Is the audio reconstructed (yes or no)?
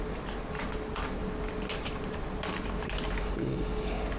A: no